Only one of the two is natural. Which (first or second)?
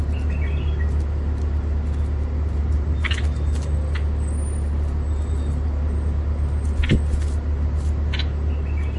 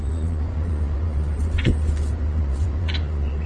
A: first